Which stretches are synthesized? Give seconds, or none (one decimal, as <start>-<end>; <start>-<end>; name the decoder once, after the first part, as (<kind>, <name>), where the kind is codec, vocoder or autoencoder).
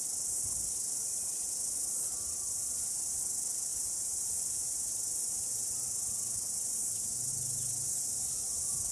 3.7-7.3 (vocoder, BigVGAN v2)